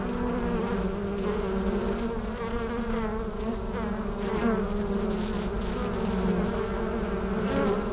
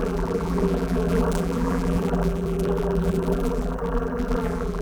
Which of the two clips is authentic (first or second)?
first